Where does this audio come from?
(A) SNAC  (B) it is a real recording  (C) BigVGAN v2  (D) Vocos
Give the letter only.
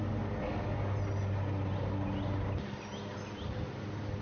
B